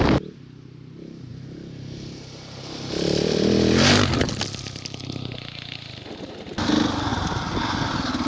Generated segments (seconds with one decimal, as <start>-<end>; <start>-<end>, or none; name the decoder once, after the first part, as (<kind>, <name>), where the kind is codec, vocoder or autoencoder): none